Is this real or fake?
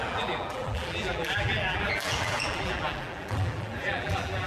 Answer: fake